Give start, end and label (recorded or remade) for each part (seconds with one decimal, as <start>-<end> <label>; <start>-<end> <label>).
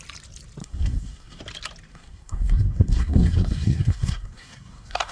0.0-0.6 recorded; 0.6-1.4 remade; 1.4-1.9 recorded; 1.9-5.1 remade